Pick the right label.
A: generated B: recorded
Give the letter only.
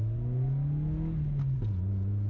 B